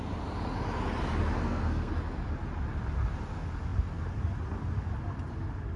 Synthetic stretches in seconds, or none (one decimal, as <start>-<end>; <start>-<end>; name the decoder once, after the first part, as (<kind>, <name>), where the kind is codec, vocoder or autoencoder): 1.4-1.9 (codec, SNAC)